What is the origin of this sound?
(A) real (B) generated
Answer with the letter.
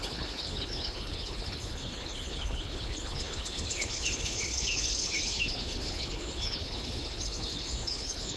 B